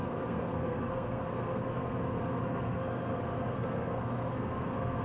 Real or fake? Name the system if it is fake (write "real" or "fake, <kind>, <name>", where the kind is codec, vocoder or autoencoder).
fake, codec, SNAC